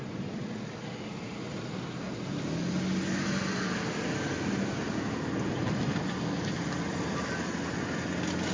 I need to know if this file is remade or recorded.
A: recorded